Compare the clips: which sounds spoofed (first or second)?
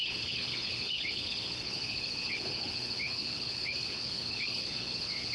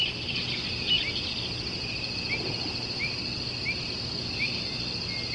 first